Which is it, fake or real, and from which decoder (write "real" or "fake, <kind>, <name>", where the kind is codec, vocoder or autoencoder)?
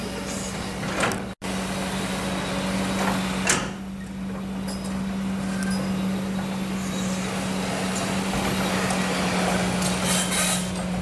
real